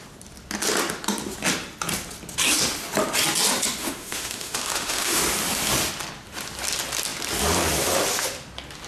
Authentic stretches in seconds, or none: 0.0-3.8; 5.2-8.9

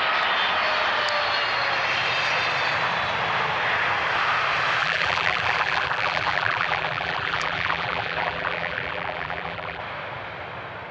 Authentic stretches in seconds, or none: 0.0-4.8; 9.8-10.9

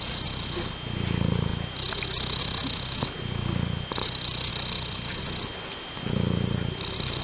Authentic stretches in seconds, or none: 0.0-7.2

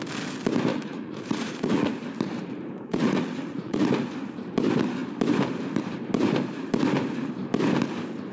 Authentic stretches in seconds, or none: 0.0-0.7; 1.9-2.9; 3.9-8.3

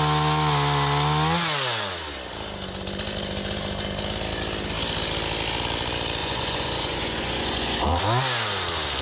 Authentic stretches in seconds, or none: 0.0-6.2; 8.0-9.0

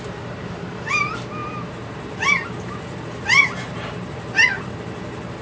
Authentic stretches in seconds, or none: none

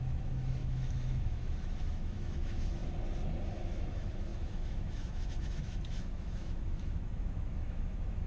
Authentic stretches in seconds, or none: 2.8-3.6